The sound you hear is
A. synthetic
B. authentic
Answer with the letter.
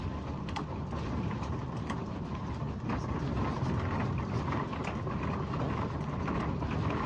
B